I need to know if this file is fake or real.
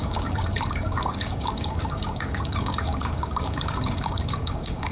fake